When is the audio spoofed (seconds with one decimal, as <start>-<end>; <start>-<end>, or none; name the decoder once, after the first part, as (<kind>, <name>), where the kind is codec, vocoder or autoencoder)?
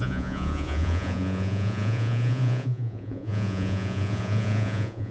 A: 0.0-5.1 (vocoder, Vocos)